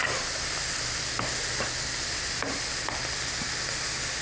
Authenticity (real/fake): real